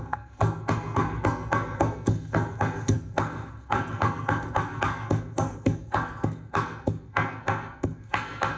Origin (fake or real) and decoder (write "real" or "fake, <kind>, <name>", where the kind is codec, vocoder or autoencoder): fake, codec, SNAC